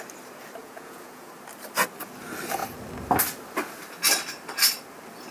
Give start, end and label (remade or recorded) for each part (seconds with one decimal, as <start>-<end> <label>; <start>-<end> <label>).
0.0-0.6 recorded; 0.6-1.3 remade; 1.3-5.3 recorded